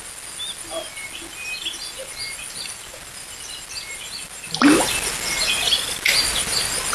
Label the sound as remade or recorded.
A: recorded